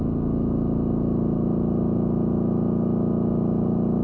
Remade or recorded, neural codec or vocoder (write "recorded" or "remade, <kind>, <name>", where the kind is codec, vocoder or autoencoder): recorded